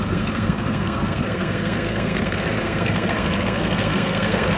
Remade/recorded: remade